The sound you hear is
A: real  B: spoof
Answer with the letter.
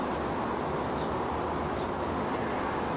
A